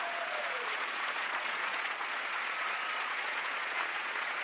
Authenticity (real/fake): fake